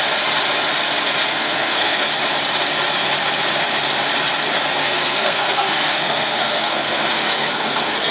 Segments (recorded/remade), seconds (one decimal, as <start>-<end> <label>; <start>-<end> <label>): 0.0-1.3 recorded; 1.3-2.1 remade; 2.1-4.8 recorded; 4.8-8.1 remade